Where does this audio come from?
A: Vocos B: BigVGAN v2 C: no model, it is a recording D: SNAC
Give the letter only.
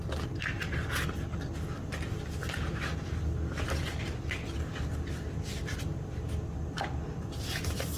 C